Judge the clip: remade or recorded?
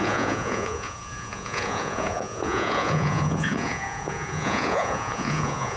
remade